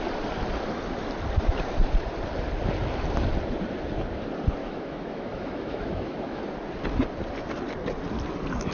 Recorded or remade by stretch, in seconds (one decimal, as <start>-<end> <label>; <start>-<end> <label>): 0.0-4.6 recorded; 4.6-6.4 remade; 6.4-8.7 recorded